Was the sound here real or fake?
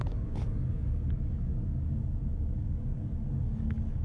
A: fake